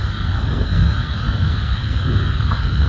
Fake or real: fake